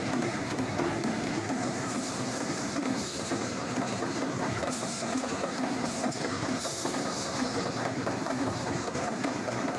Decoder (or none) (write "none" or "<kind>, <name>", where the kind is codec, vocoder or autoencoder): codec, SNAC